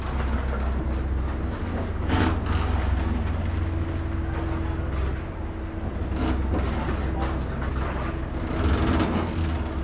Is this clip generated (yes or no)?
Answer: no